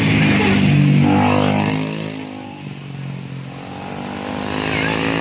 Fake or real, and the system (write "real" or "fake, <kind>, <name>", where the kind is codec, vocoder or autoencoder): real